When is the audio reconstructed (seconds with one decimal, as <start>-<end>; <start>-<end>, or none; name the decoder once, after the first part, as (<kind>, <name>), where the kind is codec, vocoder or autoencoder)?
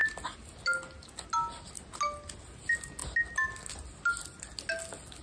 none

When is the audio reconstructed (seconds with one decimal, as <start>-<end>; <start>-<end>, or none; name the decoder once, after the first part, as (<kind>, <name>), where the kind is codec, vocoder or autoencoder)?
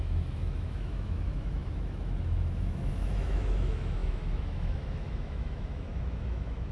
0.0-6.7 (autoencoder, DAC-VAE)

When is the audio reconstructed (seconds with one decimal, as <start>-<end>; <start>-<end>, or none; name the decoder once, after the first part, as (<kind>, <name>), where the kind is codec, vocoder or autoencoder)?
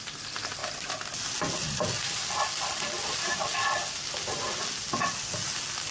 none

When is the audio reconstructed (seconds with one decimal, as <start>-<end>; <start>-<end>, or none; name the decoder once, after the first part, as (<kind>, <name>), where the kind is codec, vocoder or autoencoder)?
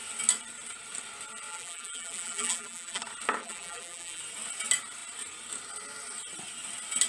1.5-3.0 (vocoder, BigVGAN v2); 3.4-4.2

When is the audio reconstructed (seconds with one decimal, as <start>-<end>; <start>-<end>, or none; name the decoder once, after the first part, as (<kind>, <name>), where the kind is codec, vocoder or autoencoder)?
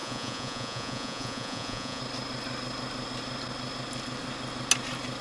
0.0-2.0 (vocoder, Vocos)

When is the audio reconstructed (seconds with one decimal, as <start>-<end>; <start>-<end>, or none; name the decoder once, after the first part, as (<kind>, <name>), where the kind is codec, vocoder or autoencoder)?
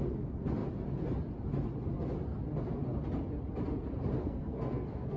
4.2-5.2 (codec, SNAC)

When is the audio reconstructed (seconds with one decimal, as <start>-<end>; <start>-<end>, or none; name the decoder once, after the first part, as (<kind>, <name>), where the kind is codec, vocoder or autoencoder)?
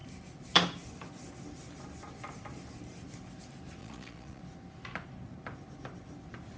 3.8-4.4 (vocoder, Vocos)